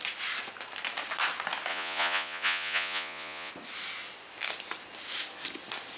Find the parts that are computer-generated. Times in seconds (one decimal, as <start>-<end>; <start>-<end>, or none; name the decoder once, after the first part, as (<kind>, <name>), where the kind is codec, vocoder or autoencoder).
1.7-3.5 (vocoder, Vocos)